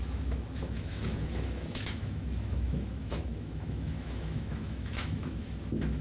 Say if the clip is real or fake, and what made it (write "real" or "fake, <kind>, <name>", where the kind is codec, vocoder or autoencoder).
fake, autoencoder, DAC-VAE